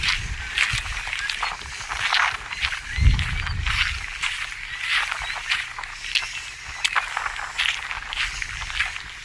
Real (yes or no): yes